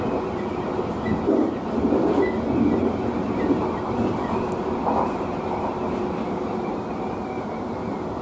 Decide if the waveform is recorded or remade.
recorded